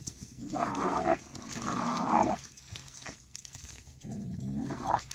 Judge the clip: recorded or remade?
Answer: remade